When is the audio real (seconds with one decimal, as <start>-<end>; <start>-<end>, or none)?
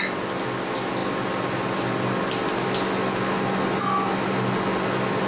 0.0-5.3